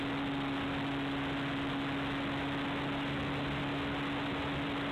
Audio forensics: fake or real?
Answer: real